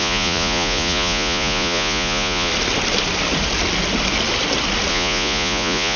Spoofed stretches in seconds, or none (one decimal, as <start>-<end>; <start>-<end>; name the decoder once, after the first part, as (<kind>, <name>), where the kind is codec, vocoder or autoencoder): 0.0-2.5 (vocoder, Vocos); 4.9-6.0